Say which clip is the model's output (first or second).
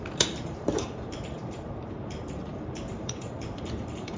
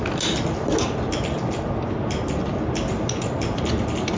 first